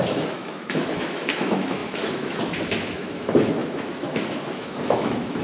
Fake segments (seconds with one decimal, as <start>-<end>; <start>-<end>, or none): 0.0-5.4